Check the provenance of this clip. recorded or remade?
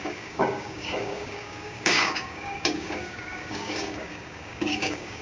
remade